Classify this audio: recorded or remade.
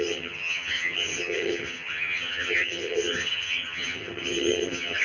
remade